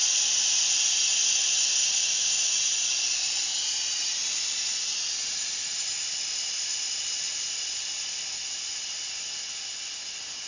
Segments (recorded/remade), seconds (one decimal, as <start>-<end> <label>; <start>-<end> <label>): 0.0-2.7 recorded; 2.7-3.4 remade; 3.4-10.5 recorded